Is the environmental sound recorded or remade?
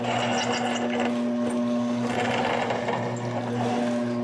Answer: recorded